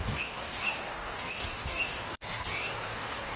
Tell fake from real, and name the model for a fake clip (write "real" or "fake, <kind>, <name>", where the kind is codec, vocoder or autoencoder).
fake, codec, DAC